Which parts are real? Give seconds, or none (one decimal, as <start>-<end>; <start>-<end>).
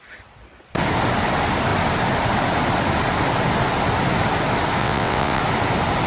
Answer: 0.0-4.8; 5.4-6.1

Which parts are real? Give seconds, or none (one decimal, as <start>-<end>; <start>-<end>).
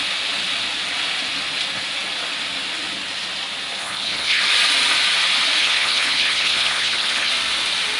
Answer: 0.0-3.8; 4.4-5.6; 7.3-8.0